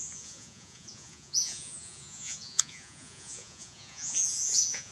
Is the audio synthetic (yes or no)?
yes